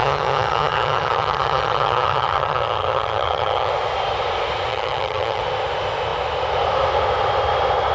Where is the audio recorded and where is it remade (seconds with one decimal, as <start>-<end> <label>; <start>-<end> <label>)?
0.0-3.7 remade; 3.7-4.7 recorded; 4.7-5.4 remade; 5.4-7.9 recorded